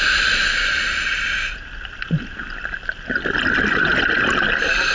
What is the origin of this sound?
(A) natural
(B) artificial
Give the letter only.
A